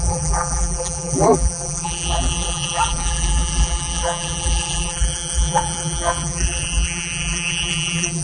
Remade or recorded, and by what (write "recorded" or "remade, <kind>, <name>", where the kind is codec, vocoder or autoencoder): remade, vocoder, BigVGAN v2